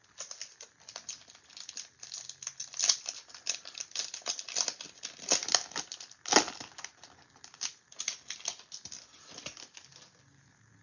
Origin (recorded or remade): recorded